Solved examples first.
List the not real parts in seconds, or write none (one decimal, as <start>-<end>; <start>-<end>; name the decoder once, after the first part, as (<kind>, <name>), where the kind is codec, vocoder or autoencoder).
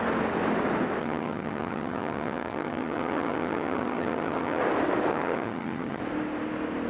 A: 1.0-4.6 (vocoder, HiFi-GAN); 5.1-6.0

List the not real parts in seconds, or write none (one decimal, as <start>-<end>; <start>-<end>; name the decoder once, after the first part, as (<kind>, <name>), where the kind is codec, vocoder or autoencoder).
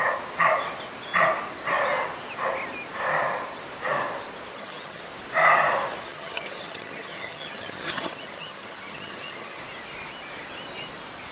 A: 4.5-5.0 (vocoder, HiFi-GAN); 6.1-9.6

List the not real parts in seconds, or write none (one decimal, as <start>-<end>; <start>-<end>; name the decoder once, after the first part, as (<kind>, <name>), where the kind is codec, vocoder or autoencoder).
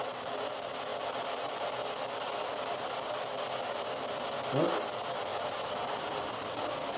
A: none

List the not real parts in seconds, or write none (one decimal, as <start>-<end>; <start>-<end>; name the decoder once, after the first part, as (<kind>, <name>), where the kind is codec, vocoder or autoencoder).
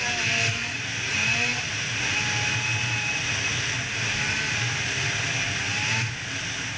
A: none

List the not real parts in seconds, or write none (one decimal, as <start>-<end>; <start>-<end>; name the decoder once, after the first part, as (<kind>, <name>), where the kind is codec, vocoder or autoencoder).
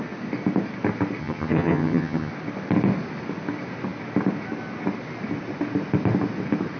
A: 1.2-2.3 (vocoder, HiFi-GAN)